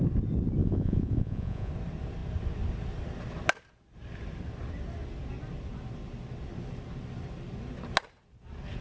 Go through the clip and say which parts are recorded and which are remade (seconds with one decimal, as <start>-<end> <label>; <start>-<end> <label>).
0.0-0.6 recorded; 0.6-1.7 remade; 1.7-8.8 recorded

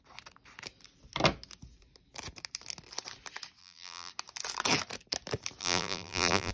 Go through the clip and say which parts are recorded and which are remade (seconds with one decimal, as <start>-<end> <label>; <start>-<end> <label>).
0.0-3.6 recorded; 3.6-4.1 remade; 4.1-5.6 recorded; 5.6-6.5 remade

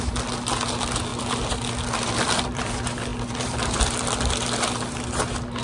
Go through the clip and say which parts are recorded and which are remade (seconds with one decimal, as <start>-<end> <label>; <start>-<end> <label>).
0.0-1.1 recorded; 1.1-2.7 remade; 2.7-3.1 recorded; 3.1-3.9 remade; 3.9-5.6 recorded

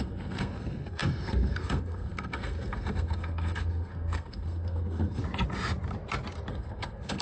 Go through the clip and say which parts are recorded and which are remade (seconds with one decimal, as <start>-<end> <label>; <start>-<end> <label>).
0.0-5.2 remade; 5.2-6.5 recorded; 6.5-7.2 remade

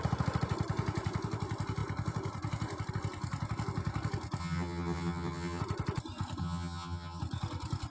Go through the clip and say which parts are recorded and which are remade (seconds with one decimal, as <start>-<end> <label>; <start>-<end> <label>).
0.0-4.4 recorded; 4.4-5.6 remade; 5.6-6.4 recorded; 6.4-7.2 remade; 7.2-7.9 recorded